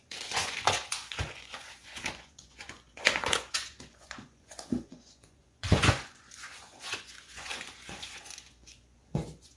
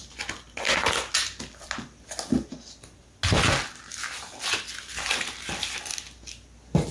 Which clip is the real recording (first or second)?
second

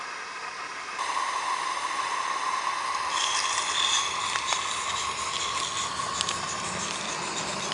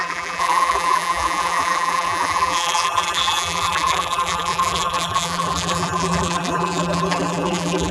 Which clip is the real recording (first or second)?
first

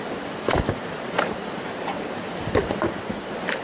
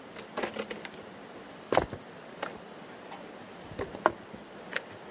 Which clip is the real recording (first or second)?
second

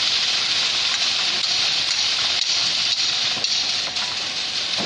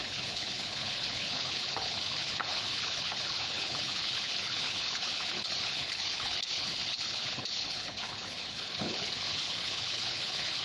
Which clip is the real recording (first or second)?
first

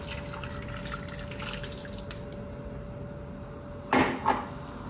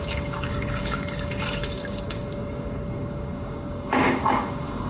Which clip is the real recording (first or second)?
first